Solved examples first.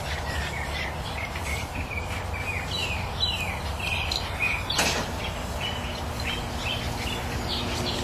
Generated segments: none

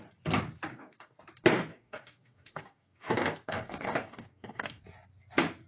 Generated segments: 0.7-1.2 (codec, DAC); 1.7-4.8

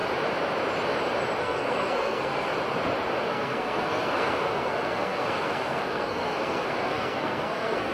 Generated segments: 1.4-2.5 (codec, SNAC); 3.3-7.9

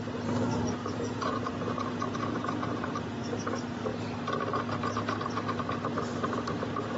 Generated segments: 0.8-3.2 (vocoder, Vocos)

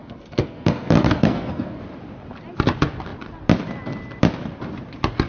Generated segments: 0.0-1.8 (codec, SNAC)

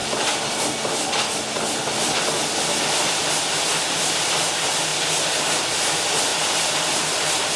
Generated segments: 0.0-4.9 (vocoder, BigVGAN v2); 5.6-6.3

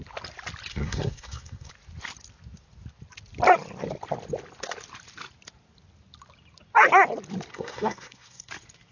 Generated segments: 0.7-1.7 (codec, SNAC); 7.5-8.5

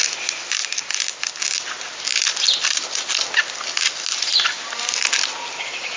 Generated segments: none